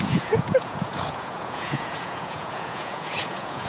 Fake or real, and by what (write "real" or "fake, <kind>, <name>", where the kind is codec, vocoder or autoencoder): fake, vocoder, Vocos